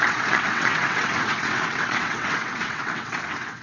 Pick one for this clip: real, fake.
fake